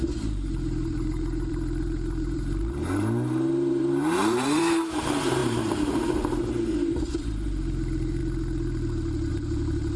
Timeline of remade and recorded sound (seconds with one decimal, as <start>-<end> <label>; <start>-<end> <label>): 0.0-8.2 remade; 8.2-9.3 recorded; 9.3-10.0 remade